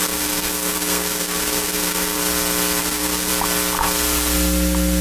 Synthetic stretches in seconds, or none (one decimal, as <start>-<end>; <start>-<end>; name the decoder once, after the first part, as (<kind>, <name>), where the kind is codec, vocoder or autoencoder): 0.0-2.2 (codec, SNAC); 2.8-3.3